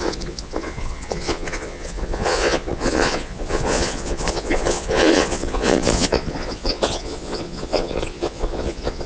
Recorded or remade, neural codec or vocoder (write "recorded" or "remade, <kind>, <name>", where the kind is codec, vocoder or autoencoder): remade, vocoder, Vocos